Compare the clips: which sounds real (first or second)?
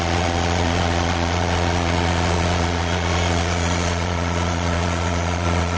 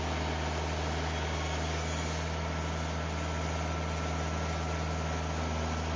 second